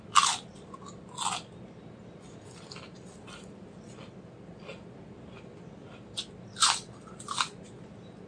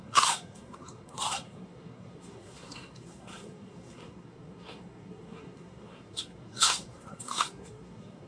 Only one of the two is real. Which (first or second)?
first